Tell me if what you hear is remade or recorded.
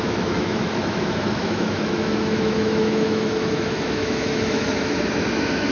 remade